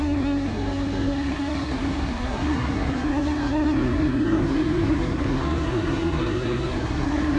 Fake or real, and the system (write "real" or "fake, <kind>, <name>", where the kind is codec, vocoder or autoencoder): fake, codec, SNAC